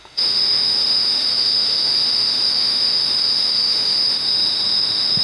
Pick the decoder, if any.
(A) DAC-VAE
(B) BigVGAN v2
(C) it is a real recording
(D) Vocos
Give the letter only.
A